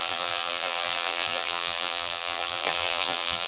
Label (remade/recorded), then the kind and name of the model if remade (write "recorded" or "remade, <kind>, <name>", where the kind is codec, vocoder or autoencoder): remade, vocoder, BigVGAN v2